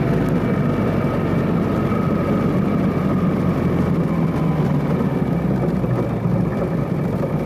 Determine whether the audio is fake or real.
real